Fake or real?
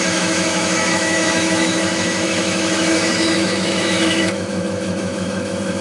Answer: fake